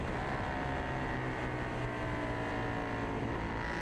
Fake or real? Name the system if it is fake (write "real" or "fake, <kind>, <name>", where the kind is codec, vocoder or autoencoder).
real